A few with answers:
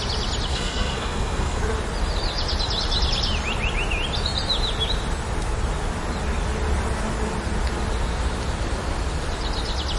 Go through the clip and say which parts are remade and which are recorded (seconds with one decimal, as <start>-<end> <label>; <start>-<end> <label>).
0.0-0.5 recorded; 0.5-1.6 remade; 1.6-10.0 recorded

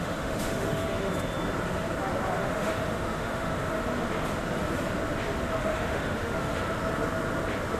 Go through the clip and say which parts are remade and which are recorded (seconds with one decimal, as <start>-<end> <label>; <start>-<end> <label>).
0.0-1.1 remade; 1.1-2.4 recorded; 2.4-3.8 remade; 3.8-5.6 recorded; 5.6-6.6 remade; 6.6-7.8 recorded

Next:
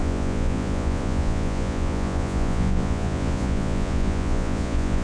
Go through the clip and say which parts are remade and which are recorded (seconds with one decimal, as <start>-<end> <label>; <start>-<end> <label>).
0.0-5.0 remade